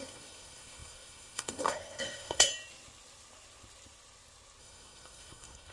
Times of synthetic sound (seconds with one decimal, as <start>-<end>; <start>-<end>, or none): 0.0-2.5; 4.6-5.7